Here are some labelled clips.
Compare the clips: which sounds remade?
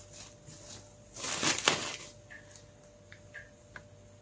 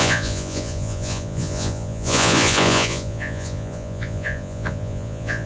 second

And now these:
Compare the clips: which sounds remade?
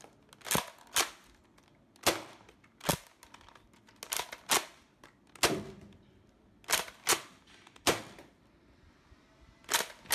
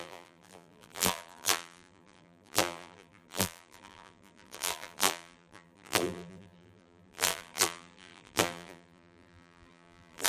second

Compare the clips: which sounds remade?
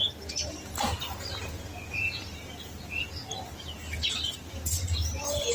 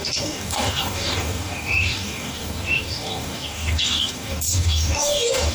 second